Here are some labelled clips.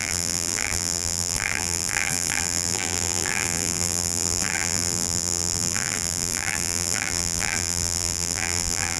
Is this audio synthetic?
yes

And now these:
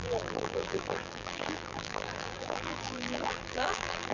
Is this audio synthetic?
yes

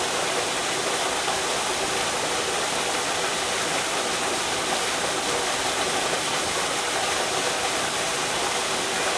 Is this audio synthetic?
no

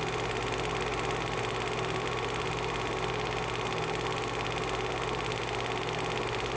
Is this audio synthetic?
no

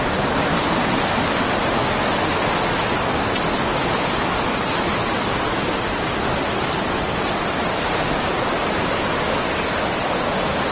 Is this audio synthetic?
no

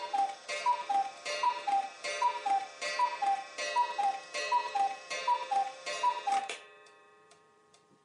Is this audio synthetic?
yes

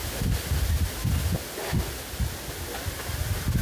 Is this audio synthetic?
no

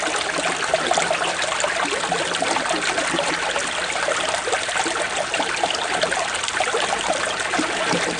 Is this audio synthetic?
no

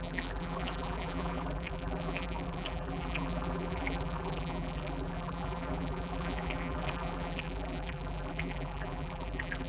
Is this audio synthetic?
yes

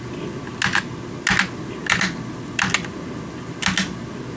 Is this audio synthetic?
no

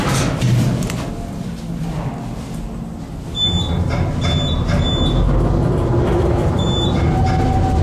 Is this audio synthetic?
no